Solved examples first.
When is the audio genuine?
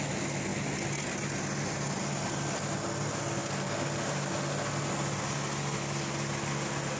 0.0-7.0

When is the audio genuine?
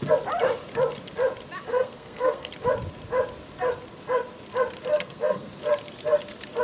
0.0-1.7; 2.5-4.9; 5.5-6.6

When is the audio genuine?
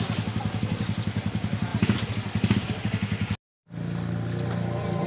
0.0-5.1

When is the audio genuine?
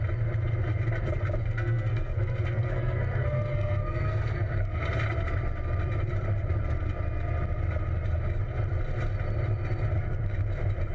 0.0-1.4; 4.8-10.9